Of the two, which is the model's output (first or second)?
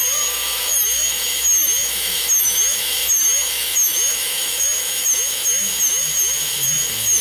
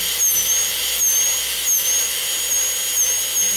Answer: first